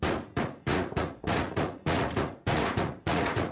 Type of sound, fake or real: fake